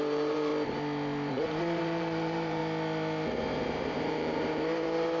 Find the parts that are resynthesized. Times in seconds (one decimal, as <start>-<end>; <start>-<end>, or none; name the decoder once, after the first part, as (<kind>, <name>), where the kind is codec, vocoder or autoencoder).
0.0-0.5 (vocoder, BigVGAN v2); 1.3-2.6; 3.4-5.2